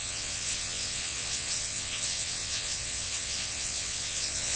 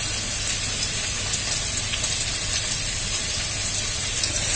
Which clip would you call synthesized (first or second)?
first